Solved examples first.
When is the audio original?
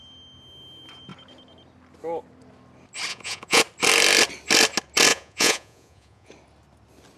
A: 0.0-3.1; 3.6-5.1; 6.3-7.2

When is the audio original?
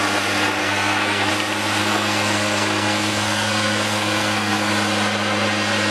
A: 0.0-0.6; 1.3-1.8; 4.7-5.9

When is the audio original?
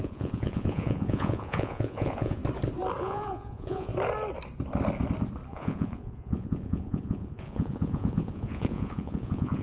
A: 2.4-3.0; 3.9-5.5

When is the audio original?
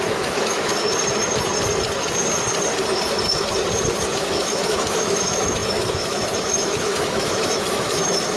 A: 0.7-4.1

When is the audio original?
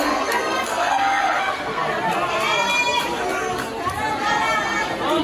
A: 1.8-5.2